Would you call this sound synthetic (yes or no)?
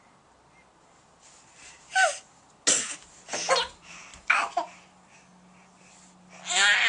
no